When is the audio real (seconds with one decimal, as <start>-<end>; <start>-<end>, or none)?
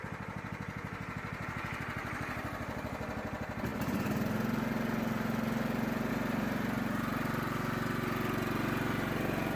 0.0-9.6